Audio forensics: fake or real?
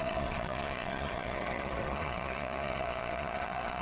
fake